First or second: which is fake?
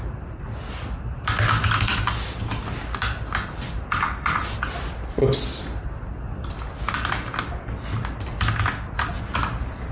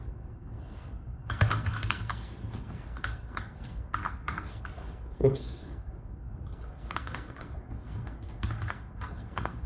second